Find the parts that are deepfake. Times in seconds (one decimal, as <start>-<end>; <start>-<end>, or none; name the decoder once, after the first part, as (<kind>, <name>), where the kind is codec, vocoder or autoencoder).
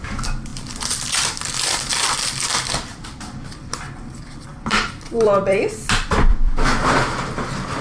0.0-7.8 (vocoder, BigVGAN v2)